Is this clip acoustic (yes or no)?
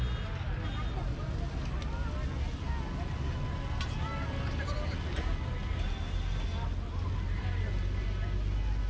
yes